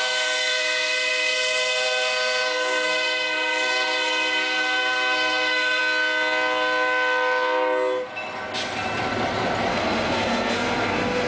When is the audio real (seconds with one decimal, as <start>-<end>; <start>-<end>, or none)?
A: 5.8-9.7